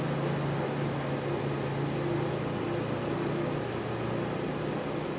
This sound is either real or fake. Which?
real